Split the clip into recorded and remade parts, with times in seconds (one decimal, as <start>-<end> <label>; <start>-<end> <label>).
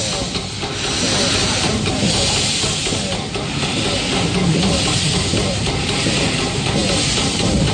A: 0.0-1.4 recorded; 1.4-3.0 remade; 3.0-5.3 recorded; 5.3-6.2 remade; 6.2-7.7 recorded